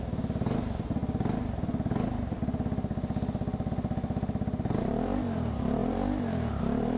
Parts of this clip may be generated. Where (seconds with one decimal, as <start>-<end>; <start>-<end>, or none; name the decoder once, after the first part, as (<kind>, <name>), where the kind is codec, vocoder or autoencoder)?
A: none